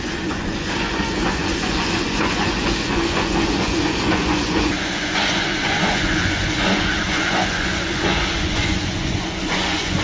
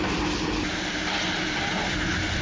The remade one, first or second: first